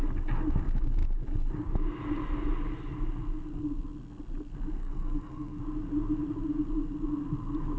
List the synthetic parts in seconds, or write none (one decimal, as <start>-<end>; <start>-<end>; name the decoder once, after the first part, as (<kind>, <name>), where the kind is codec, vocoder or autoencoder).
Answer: 4.8-5.6 (codec, SNAC)